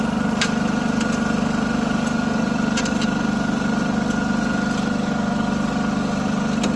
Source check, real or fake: real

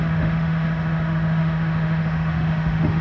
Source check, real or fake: fake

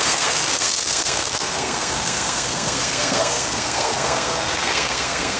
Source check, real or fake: fake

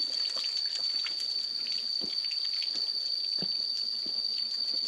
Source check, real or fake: real